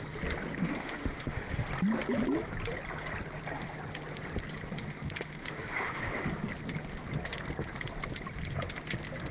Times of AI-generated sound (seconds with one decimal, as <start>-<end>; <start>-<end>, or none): 0.6-1.7; 5.4-6.3

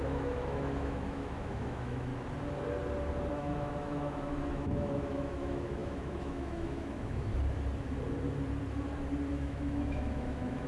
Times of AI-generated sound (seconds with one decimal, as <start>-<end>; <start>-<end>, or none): 0.0-2.1; 3.3-7.3; 9.3-10.7

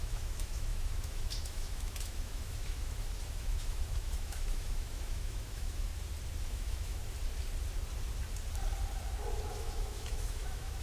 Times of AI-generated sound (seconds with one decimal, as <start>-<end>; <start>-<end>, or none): 0.0-5.9; 6.4-7.0; 9.5-10.8

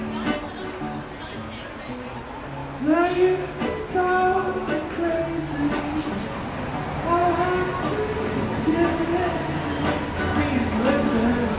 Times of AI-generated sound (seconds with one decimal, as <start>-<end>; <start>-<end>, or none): 2.6-3.5

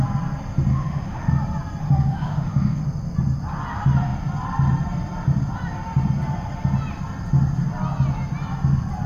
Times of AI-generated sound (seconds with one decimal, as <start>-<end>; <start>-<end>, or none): 0.7-1.3; 1.8-2.8

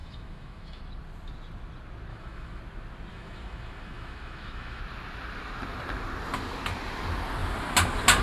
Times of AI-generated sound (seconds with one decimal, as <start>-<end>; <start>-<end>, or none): 0.0-0.8; 2.1-2.6; 3.1-4.8